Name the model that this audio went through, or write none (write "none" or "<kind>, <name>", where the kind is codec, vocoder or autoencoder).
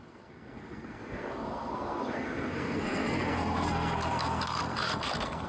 codec, SNAC